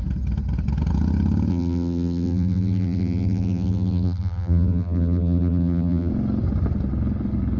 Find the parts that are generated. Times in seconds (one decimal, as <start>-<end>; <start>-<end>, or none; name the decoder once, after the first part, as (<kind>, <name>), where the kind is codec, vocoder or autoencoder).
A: 1.5-6.1 (vocoder, BigVGAN v2)